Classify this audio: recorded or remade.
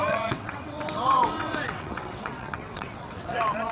remade